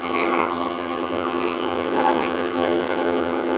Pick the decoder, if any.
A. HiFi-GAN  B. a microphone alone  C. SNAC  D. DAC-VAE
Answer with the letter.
A